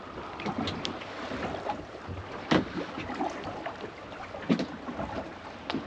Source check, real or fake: real